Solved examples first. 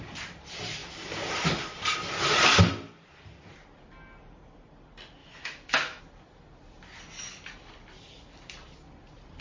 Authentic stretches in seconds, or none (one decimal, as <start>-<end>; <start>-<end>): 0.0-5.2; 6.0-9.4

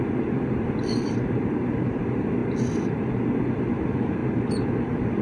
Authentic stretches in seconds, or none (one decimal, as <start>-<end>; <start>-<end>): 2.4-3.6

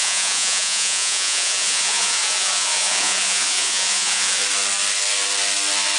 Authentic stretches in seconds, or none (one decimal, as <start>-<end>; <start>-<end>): 4.4-6.0

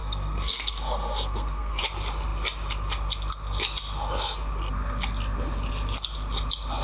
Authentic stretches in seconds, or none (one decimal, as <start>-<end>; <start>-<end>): 1.8-6.8